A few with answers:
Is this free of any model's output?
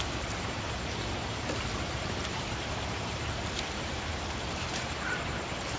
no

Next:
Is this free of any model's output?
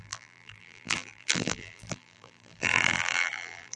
no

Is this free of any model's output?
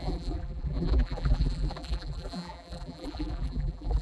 no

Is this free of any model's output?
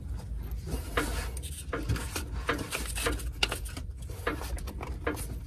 yes